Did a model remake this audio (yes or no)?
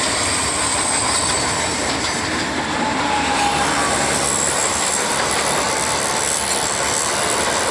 no